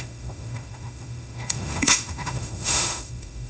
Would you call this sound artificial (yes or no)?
yes